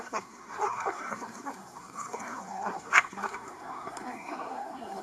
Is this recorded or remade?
remade